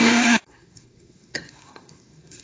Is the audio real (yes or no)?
no